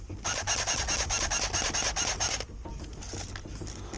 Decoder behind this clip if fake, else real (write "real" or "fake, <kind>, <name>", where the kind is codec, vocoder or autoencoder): real